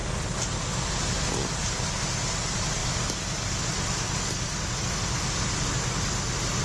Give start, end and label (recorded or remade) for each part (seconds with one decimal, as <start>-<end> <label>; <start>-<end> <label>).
0.0-6.6 recorded

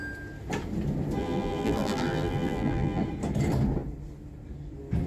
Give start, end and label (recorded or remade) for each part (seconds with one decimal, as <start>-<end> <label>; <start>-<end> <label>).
0.0-1.2 recorded; 1.2-3.0 remade; 3.0-5.1 recorded

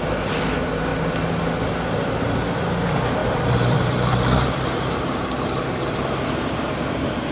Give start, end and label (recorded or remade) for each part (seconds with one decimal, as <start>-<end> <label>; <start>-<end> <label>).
0.0-7.3 recorded

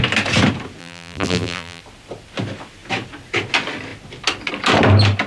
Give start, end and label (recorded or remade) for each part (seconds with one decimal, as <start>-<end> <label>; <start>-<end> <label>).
0.0-0.8 recorded; 0.8-1.8 remade; 1.8-5.3 recorded

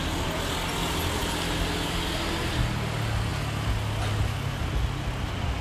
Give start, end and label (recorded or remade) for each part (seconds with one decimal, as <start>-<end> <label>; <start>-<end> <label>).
0.0-5.6 recorded